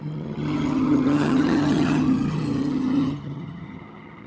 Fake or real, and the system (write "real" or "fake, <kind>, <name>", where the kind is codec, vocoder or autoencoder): fake, vocoder, HiFi-GAN